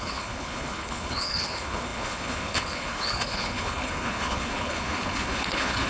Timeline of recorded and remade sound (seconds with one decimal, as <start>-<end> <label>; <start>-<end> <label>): 0.0-5.9 remade